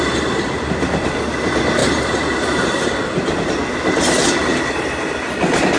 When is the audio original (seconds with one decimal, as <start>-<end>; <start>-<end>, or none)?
0.0-5.8